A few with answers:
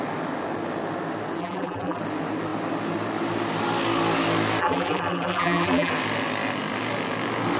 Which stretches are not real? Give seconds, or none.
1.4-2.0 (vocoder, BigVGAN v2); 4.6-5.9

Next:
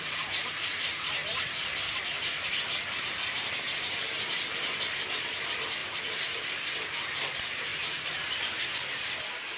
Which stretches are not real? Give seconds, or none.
none

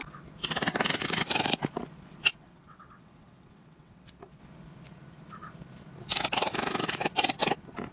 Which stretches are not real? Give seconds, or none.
2.3-4.4 (vocoder, WaveNeXt)

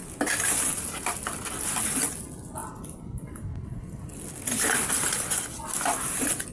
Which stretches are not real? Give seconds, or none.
2.6-4.3 (vocoder, BigVGAN v2)

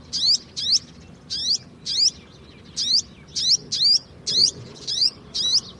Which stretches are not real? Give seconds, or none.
4.4-5.2 (vocoder, Vocos)

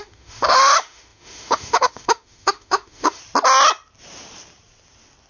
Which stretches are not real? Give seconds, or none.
0.0-3.2 (autoencoder, DAC-VAE)

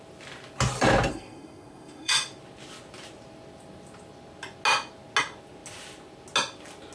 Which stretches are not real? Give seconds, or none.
1.1-2.1 (codec, SNAC)